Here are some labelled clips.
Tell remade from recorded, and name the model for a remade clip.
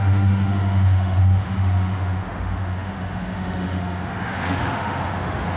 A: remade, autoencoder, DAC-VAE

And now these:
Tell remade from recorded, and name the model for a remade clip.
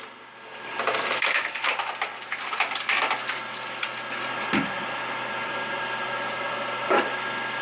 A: recorded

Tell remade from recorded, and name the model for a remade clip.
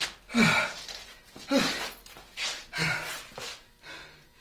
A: recorded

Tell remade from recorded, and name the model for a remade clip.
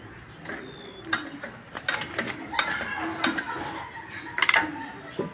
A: recorded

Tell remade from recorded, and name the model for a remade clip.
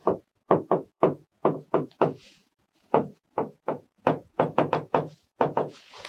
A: remade, vocoder, Vocos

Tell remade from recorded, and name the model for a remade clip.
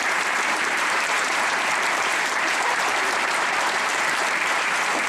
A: remade, vocoder, BigVGAN v2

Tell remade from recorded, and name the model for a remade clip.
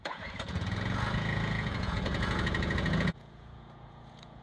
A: remade, vocoder, Vocos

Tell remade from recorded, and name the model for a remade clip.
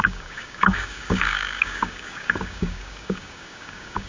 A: remade, codec, DAC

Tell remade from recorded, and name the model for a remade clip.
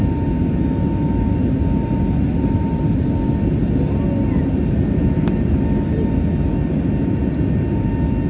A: recorded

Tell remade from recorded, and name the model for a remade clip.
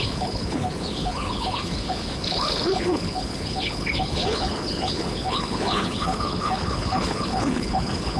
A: remade, codec, HILCodec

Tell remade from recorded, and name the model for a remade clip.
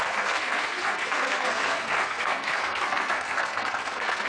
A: remade, codec, SNAC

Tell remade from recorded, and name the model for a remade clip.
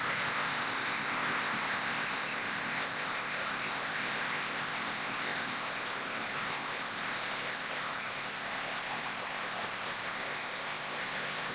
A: remade, codec, ZipCodec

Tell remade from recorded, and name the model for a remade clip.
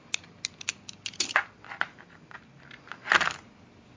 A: recorded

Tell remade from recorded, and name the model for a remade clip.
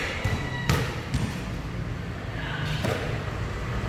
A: recorded